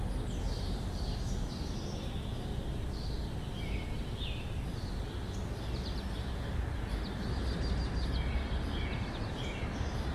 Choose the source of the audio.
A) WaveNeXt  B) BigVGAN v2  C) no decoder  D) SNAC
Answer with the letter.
C